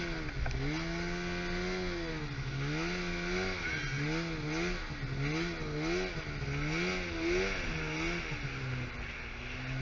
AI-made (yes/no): no